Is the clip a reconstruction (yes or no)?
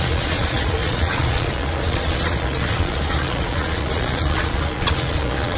yes